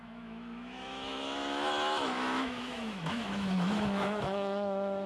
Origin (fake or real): fake